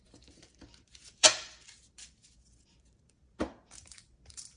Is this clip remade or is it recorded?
remade